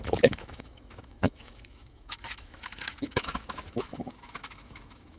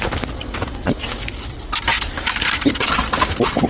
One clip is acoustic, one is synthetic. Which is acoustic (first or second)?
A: second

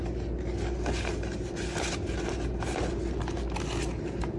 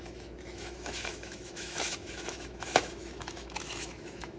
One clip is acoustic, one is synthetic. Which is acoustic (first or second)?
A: first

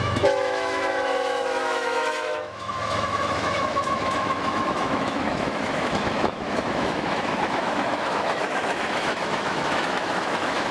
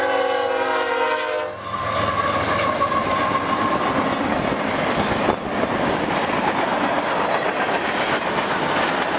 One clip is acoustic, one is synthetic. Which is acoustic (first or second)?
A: second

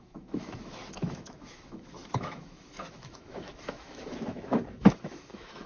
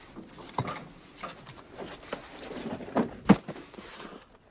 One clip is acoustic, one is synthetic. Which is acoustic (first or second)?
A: second